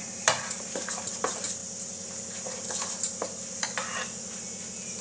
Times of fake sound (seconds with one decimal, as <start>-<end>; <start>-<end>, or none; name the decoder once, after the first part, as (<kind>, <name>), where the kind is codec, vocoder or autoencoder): 0.0-1.6 (vocoder, BigVGAN v2); 4.6-5.0